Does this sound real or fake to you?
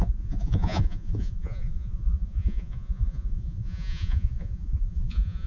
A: fake